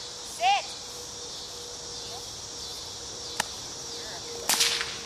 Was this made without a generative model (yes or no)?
yes